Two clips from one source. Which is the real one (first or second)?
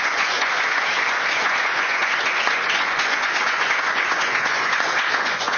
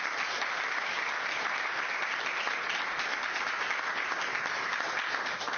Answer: second